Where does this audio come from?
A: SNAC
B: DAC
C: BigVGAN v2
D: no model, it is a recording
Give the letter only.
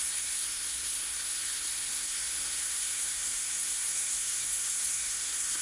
A